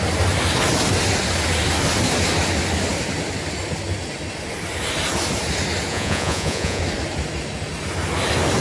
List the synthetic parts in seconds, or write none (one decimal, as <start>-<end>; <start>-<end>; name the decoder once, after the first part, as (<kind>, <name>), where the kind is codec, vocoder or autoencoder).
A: 5.9-6.8 (vocoder, Vocos)

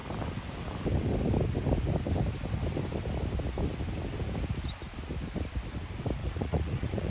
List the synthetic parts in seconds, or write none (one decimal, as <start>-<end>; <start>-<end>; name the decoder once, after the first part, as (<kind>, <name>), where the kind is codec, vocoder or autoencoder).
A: 6.2-7.1 (vocoder, Vocos)

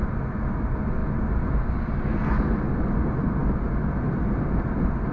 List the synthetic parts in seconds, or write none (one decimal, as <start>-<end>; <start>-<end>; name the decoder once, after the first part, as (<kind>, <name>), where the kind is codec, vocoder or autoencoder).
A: none

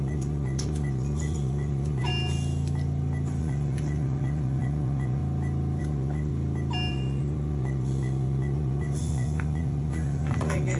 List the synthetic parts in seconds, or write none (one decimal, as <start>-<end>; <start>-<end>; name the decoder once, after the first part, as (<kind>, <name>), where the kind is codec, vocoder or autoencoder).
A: 0.0-2.1 (vocoder, Vocos); 3.4-5.2; 5.8-6.3; 6.9-10.8

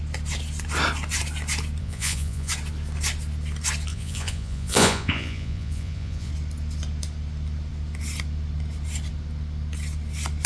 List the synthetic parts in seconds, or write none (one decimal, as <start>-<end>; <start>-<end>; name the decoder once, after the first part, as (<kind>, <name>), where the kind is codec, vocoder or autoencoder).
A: 1.8-2.5 (vocoder, Vocos); 3.9-6.3